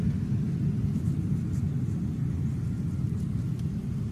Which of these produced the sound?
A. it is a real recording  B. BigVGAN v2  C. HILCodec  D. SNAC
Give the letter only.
A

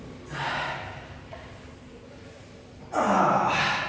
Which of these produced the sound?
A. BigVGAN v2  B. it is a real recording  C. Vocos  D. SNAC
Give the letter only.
B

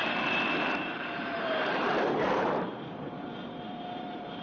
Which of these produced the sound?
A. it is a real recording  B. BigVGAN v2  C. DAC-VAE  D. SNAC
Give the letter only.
B